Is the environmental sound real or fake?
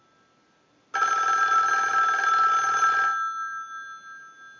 real